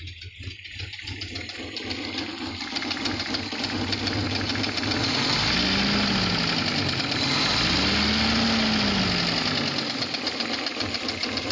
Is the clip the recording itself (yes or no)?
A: yes